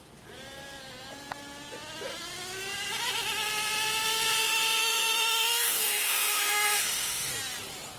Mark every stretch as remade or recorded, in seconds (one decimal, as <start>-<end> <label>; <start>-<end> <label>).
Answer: 0.0-4.4 recorded; 4.4-7.3 remade; 7.3-8.0 recorded